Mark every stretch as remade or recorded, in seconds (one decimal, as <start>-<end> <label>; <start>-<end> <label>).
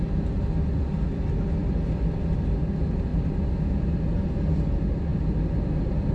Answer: 0.0-6.1 recorded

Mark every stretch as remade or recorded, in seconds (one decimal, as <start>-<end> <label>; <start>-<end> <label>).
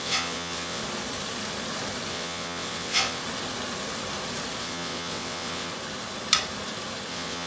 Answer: 0.0-0.8 remade; 0.8-2.1 recorded; 2.1-3.2 remade; 3.2-4.6 recorded; 4.6-5.7 remade; 5.7-7.1 recorded; 7.1-7.5 remade